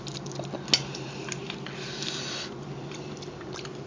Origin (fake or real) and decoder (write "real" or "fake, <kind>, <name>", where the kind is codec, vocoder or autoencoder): real